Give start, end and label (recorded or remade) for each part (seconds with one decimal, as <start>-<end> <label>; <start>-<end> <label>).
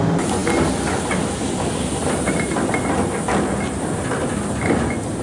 0.0-5.2 recorded